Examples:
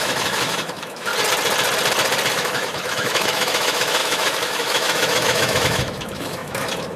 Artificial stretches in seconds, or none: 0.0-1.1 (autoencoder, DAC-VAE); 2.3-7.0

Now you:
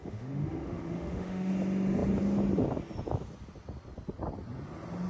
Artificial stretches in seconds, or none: 0.0-1.5 (autoencoder, DAC-VAE)